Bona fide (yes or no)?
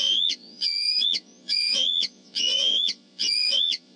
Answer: no